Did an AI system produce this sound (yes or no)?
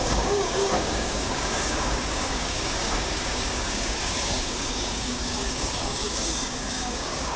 yes